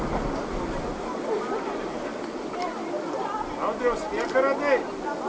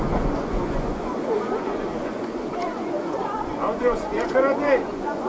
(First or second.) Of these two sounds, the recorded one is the first